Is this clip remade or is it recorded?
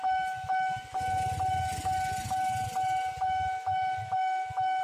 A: recorded